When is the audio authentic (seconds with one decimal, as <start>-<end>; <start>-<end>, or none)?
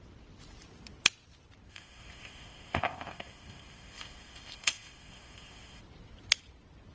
0.0-1.7; 5.8-6.9